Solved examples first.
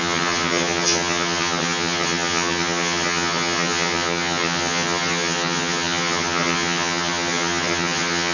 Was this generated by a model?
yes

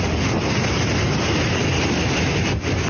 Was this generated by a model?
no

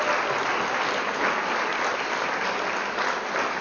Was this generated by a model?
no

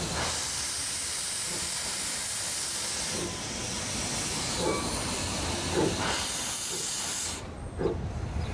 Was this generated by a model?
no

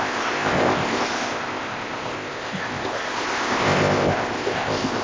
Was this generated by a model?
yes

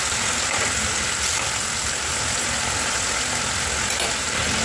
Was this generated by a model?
no